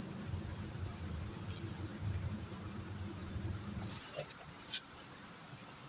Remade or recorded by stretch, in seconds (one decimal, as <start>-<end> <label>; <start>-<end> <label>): 0.0-1.9 recorded; 1.9-5.4 remade; 5.4-5.9 recorded